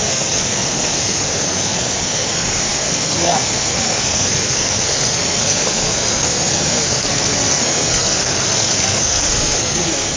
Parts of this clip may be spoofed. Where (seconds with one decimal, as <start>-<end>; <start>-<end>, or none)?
0.0-10.2

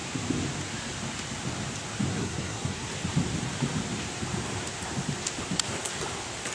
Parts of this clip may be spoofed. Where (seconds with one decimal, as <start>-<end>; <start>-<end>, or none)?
2.1-2.9

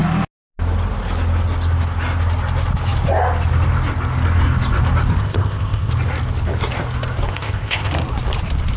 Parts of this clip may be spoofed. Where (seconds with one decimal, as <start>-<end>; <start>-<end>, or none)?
5.2-5.9; 7.3-7.9

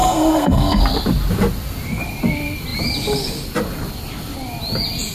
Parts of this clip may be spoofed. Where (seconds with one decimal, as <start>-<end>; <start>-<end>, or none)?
0.0-0.8

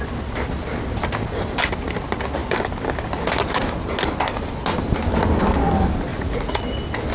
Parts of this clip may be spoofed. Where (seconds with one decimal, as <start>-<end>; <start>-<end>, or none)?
6.1-6.6

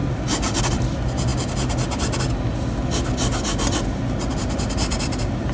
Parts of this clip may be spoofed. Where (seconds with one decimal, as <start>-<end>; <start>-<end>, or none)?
none